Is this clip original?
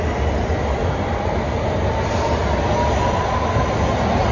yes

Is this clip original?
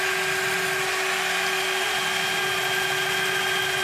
yes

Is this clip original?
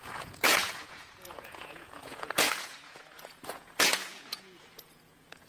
no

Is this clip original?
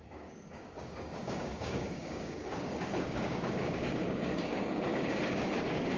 no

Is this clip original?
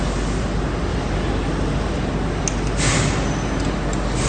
yes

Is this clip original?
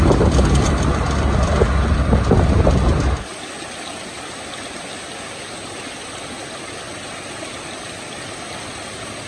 yes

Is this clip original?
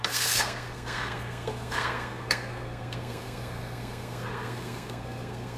no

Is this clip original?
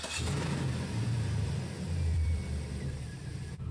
no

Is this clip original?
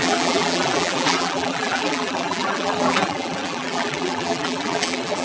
no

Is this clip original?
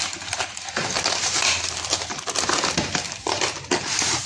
no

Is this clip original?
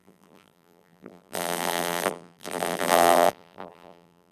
no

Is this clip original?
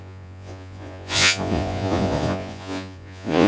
no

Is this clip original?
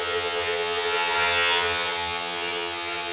no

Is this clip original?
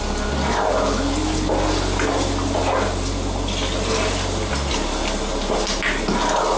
yes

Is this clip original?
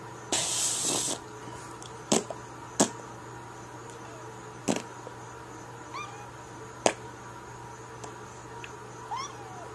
yes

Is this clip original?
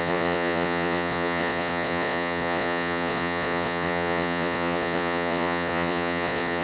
no